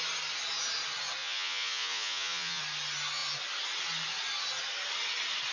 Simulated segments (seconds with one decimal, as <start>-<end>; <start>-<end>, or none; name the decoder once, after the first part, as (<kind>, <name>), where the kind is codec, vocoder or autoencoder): 1.2-2.6 (vocoder, Vocos)